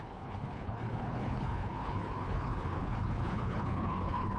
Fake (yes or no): yes